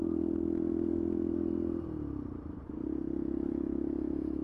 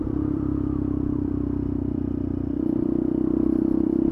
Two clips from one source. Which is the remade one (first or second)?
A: second